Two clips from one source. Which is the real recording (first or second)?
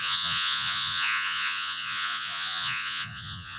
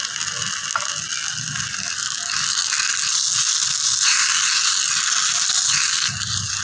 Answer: second